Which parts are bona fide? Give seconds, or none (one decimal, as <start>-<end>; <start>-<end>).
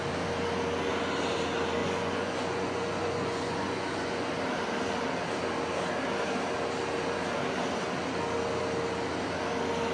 0.0-1.8; 4.3-9.9